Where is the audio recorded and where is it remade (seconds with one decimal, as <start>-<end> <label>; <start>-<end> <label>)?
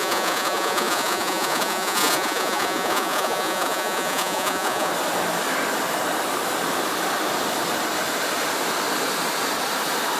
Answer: 0.0-4.9 remade; 4.9-10.2 recorded